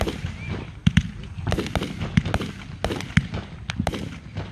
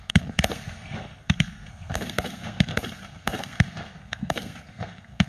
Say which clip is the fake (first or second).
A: second